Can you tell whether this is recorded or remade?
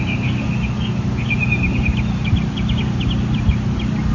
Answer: recorded